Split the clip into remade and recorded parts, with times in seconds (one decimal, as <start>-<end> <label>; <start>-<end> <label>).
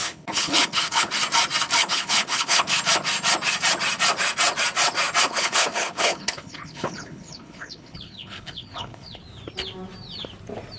0.0-1.1 remade; 1.1-1.8 recorded; 1.8-2.8 remade; 2.8-5.3 recorded; 5.3-9.2 remade; 9.2-10.8 recorded